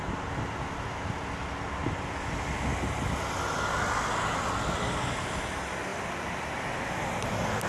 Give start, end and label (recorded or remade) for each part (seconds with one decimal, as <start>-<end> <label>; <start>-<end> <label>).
0.0-7.7 recorded